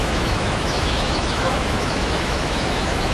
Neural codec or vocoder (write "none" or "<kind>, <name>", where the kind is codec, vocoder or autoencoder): autoencoder, DAC-VAE